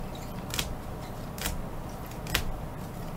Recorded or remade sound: recorded